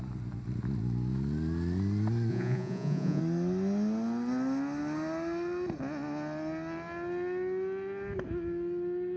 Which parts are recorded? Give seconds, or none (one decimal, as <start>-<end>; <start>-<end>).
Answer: 0.0-2.3; 3.2-9.2